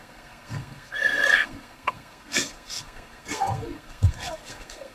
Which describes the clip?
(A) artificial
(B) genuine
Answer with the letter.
A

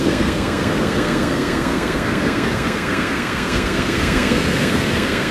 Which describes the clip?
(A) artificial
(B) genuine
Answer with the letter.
A